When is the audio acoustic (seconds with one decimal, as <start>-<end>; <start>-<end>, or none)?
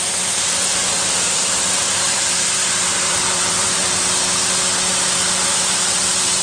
0.0-1.4; 4.2-6.4